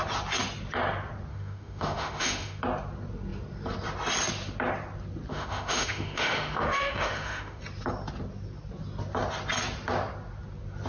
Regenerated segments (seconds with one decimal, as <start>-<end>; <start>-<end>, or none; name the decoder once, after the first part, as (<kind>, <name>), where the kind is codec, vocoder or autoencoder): 1.3-2.6 (autoencoder, DAC-VAE); 5.3-7.6